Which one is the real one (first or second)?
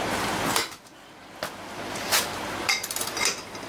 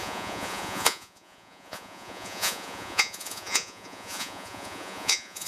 first